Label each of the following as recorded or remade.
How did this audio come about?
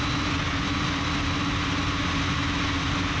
recorded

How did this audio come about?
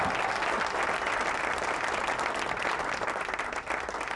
recorded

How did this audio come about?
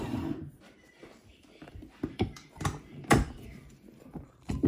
remade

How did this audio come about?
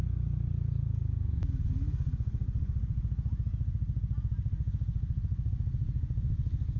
recorded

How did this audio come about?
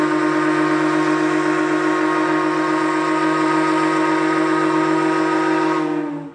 recorded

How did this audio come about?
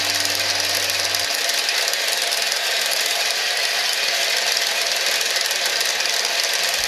recorded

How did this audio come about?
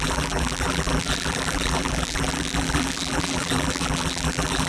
remade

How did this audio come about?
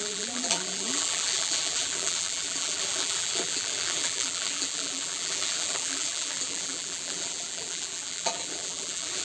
remade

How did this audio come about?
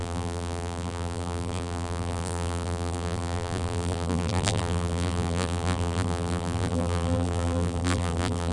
remade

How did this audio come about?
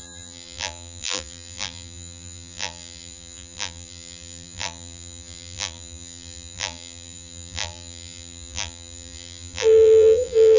remade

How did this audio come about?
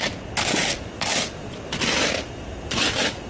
remade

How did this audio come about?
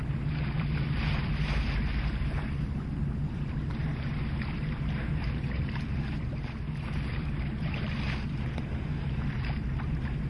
remade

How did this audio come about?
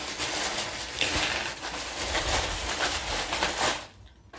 recorded